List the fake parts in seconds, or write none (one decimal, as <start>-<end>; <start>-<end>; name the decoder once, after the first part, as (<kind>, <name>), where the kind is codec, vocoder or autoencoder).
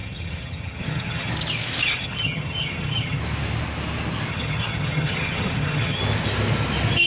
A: 0.0-1.3 (vocoder, HiFi-GAN); 1.8-3.2; 4.3-6.0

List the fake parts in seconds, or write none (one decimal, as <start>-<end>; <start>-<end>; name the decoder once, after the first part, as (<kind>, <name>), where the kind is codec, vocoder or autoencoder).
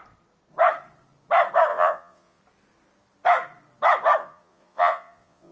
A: 1.7-2.4 (vocoder, Vocos); 4.2-5.5